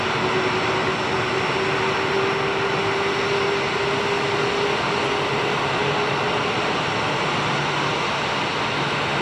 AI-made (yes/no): no